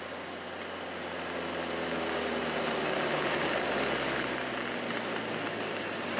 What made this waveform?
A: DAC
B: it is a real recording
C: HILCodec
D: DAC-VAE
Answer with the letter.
B